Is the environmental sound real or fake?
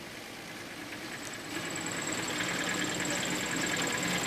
real